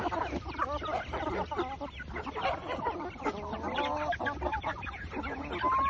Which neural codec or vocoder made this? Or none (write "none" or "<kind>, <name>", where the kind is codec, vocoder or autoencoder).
none